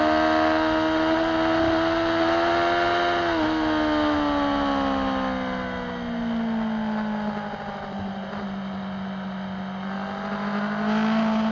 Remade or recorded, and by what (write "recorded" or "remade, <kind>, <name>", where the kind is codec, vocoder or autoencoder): recorded